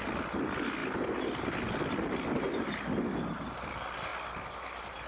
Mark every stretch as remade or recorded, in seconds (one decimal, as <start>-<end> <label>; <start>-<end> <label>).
0.0-5.1 recorded